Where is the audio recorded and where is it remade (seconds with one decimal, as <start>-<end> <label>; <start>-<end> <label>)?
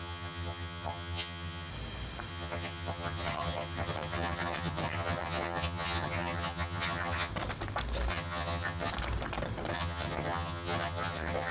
0.0-1.7 remade; 1.7-2.3 recorded; 2.3-7.3 remade; 7.3-8.1 recorded; 8.1-8.9 remade; 8.9-9.7 recorded; 9.7-11.5 remade